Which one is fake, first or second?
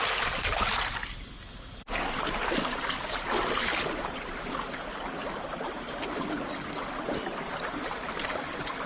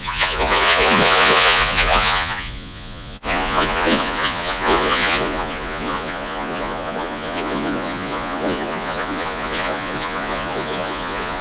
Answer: second